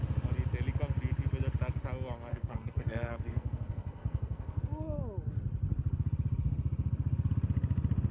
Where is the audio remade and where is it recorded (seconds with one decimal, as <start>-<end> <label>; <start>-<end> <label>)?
0.0-2.3 recorded; 2.3-4.6 remade; 4.6-8.1 recorded